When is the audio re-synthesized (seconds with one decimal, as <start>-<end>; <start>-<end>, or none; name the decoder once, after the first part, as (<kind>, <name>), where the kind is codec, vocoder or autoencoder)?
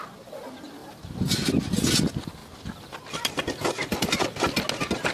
none